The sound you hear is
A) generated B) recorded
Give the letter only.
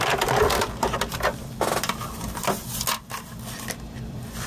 A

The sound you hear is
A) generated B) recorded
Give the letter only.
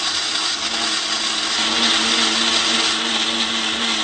B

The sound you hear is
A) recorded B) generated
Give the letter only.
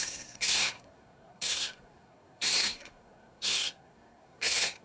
B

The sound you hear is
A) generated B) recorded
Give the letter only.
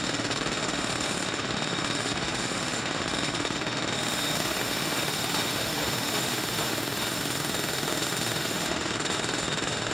A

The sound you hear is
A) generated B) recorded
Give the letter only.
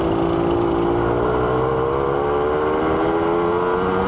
B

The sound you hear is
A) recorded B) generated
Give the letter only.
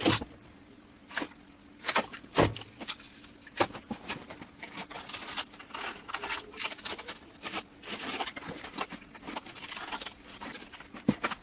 A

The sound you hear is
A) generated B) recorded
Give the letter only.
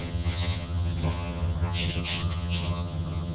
A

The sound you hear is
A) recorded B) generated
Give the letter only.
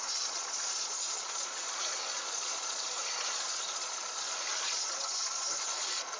B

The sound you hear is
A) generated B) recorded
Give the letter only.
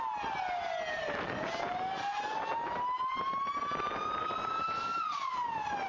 B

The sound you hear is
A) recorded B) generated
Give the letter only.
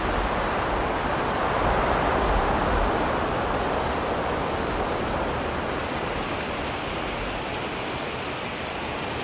A